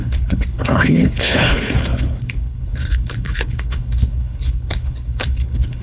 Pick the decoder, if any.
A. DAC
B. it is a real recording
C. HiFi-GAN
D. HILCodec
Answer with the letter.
D